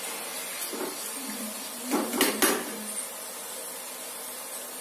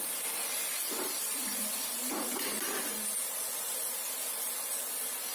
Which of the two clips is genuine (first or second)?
first